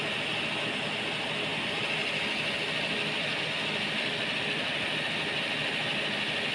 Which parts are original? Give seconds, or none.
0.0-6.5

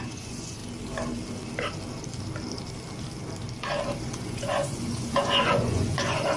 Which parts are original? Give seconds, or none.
0.6-4.0